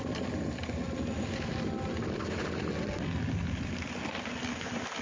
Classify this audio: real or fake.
real